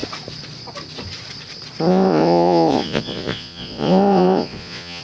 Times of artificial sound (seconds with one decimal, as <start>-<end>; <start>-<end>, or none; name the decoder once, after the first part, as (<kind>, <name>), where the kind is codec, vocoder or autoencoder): 1.9-5.0 (vocoder, Vocos)